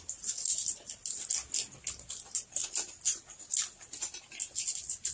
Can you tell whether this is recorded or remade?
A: recorded